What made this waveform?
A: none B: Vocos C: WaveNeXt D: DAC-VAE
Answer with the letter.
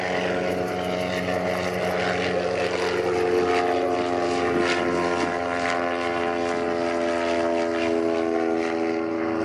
A